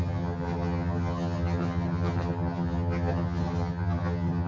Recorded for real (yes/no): no